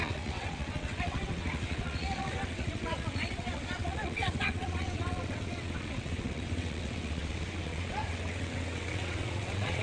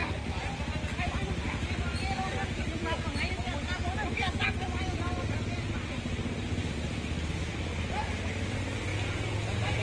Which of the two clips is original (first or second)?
second